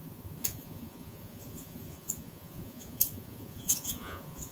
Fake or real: fake